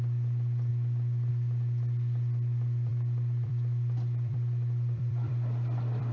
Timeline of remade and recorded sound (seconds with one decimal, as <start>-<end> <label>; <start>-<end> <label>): 0.0-6.1 remade